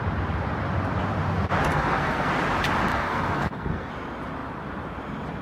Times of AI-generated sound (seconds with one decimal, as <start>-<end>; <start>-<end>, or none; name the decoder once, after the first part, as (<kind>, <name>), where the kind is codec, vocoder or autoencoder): 1.7-2.3 (codec, SNAC); 2.9-3.9